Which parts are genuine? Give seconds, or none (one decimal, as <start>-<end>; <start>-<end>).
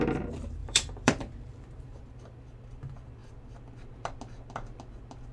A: 0.0-0.6; 2.1-5.3